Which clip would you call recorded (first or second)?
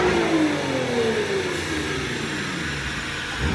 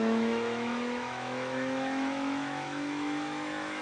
first